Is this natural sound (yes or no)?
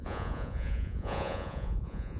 no